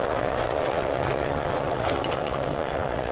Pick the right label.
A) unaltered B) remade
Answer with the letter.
B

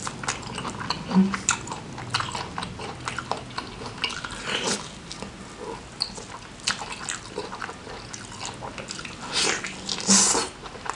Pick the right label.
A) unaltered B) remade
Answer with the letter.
A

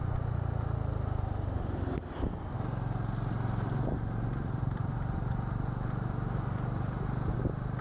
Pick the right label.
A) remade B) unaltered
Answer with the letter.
B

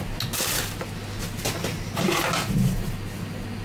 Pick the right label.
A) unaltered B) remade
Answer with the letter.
A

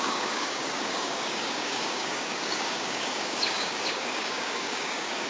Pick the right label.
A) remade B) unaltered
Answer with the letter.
A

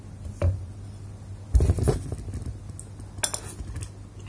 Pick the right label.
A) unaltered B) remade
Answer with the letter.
A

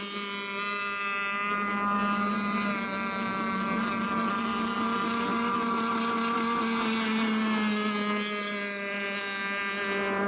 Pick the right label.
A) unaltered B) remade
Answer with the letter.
A